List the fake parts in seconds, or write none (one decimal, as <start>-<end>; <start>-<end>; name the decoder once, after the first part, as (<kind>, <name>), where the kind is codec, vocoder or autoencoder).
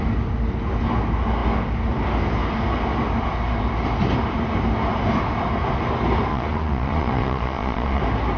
6.3-8.0 (vocoder, Vocos)